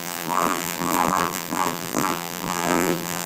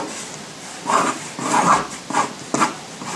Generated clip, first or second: first